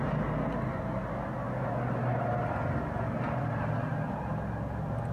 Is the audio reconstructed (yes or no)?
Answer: no